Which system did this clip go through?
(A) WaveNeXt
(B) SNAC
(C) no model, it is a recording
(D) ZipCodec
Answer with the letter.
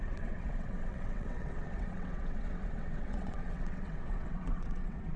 A